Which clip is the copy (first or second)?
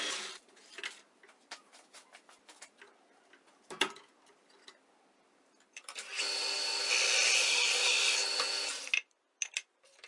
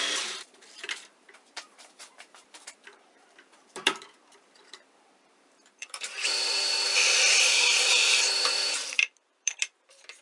second